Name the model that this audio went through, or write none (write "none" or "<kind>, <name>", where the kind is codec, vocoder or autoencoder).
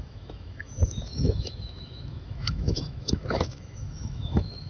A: autoencoder, DAC-VAE